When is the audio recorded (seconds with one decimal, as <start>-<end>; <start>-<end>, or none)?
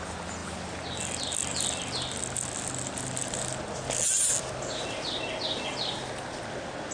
0.0-6.9